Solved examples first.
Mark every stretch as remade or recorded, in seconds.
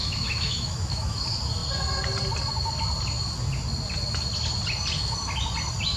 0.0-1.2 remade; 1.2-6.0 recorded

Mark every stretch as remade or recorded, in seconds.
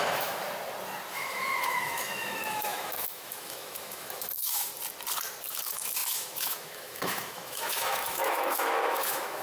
0.0-0.4 remade; 0.4-1.1 recorded; 1.1-4.7 remade; 4.7-5.5 recorded; 5.5-9.4 remade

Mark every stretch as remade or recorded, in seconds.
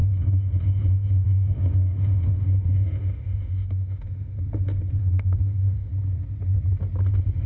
0.0-4.4 remade; 4.4-5.0 recorded; 5.0-5.9 remade; 5.9-7.5 recorded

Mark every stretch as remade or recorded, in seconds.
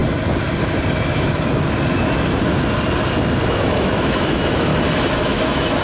0.0-3.5 recorded; 3.5-4.7 remade; 4.7-5.2 recorded; 5.2-5.8 remade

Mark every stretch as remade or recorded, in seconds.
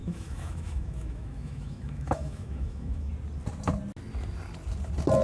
0.0-3.1 remade; 3.1-5.2 recorded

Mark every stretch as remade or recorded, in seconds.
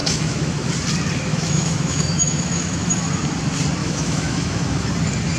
0.0-0.7 remade; 0.7-1.3 recorded; 1.3-3.1 remade; 3.1-3.8 recorded; 3.8-4.9 remade; 4.9-5.4 recorded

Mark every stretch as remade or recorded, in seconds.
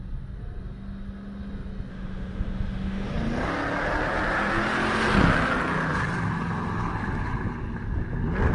0.0-1.9 recorded; 1.9-3.1 remade; 3.1-8.5 recorded